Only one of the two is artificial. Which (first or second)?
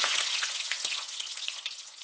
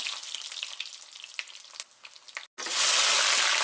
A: first